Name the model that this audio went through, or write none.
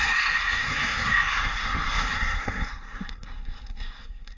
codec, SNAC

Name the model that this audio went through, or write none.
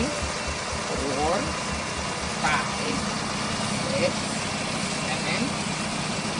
none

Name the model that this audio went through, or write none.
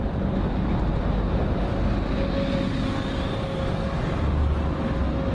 none